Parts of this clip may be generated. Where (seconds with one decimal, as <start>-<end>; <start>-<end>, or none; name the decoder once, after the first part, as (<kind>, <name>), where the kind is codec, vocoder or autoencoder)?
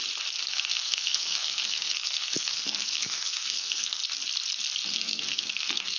0.5-4.0 (codec, SNAC); 4.9-6.0